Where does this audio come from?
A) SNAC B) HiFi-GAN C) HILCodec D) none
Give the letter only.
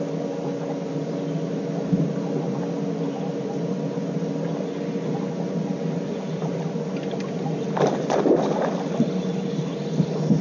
D